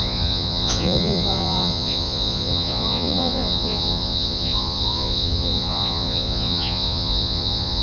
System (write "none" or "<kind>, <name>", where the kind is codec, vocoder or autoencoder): vocoder, Vocos